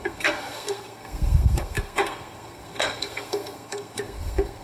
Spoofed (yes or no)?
yes